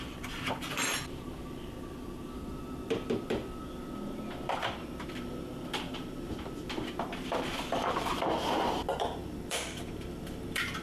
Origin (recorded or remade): remade